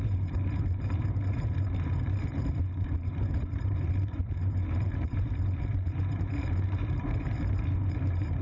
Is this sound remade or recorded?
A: remade